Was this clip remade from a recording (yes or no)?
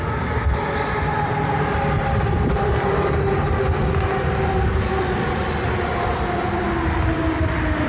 no